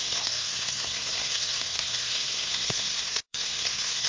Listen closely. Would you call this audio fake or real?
fake